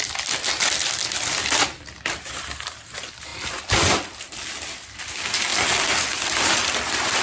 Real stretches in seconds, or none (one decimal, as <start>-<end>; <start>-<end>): 3.3-5.0; 5.5-6.0